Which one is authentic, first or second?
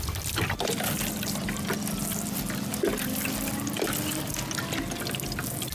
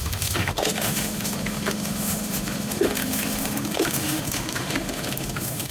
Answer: first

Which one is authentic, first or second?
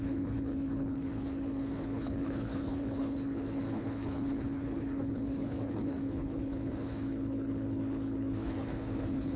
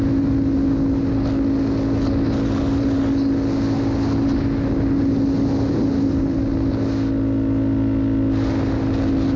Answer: second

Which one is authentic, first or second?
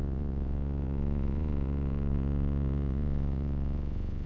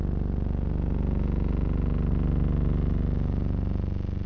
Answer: second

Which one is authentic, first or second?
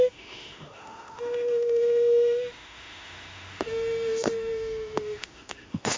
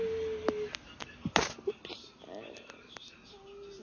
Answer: second